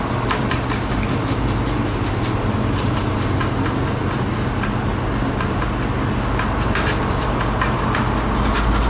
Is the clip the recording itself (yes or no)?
yes